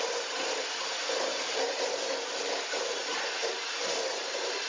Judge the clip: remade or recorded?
remade